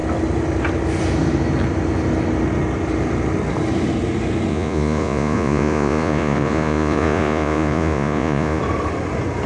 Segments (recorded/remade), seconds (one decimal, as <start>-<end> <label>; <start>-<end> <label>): 0.0-4.5 recorded; 4.5-8.6 remade; 8.6-9.5 recorded